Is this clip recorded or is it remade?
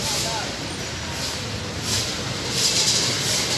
recorded